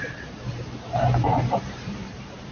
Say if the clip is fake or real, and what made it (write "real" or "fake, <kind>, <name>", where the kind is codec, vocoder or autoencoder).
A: fake, vocoder, BigVGAN v2